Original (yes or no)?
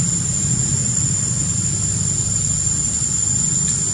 yes